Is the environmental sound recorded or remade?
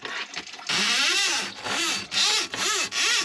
recorded